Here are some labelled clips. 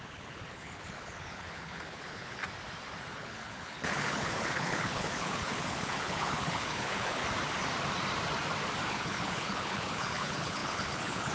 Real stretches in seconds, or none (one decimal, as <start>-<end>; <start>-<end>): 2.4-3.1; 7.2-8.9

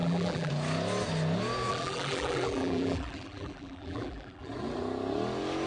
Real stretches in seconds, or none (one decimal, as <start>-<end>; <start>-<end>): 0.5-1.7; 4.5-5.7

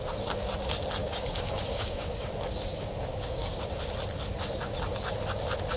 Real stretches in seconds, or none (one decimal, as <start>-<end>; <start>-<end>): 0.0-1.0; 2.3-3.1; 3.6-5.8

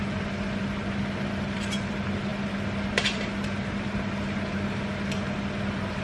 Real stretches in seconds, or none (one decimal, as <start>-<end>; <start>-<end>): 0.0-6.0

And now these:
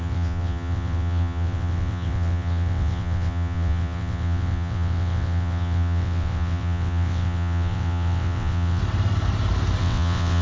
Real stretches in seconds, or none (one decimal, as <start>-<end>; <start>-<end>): 8.8-9.8